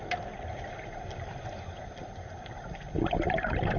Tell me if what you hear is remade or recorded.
recorded